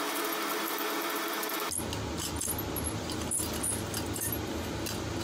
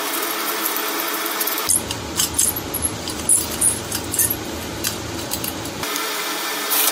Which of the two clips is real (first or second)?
first